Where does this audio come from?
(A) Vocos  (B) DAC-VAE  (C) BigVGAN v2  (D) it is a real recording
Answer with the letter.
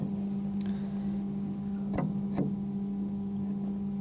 D